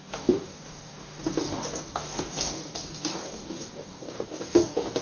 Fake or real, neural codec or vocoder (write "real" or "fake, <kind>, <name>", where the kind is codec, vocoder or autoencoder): fake, codec, DAC